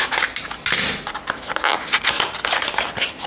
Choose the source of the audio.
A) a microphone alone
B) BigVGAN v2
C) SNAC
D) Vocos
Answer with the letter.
A